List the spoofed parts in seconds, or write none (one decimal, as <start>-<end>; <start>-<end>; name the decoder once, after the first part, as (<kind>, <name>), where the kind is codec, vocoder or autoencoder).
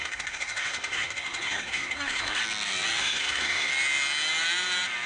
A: 0.0-2.4 (codec, SNAC); 3.0-3.7